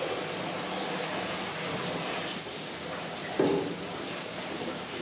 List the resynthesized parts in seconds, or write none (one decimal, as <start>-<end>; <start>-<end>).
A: 3.2-5.0